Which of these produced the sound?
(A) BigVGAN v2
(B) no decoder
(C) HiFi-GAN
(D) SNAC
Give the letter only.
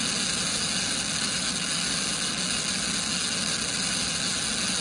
B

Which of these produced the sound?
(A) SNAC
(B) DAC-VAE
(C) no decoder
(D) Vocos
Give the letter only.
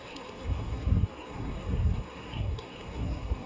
A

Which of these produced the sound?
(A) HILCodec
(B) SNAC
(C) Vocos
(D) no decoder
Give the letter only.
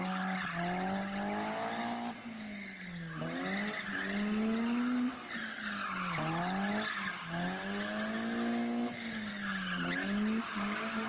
D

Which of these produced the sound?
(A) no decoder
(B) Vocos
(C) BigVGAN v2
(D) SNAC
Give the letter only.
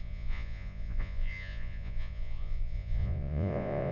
B